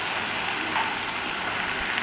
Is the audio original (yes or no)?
yes